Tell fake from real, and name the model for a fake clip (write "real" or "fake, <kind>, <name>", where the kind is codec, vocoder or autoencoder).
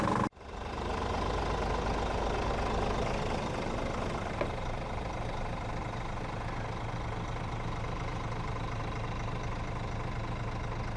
real